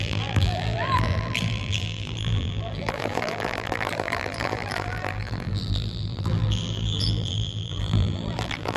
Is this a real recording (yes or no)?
no